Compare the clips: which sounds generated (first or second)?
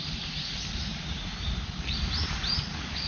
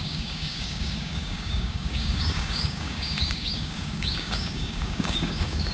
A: second